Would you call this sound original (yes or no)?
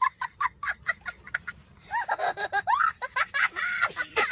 no